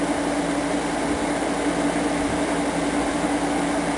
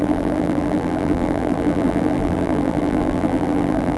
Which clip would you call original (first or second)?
first